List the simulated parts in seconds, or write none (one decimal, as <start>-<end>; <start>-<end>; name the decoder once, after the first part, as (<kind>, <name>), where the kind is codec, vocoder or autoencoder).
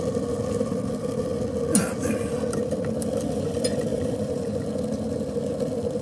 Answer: 0.0-1.3 (vocoder, BigVGAN v2); 2.5-6.0